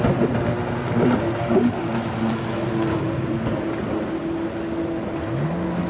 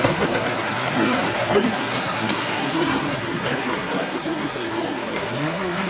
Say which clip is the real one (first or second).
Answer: first